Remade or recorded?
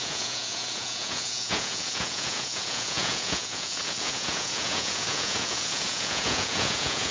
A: remade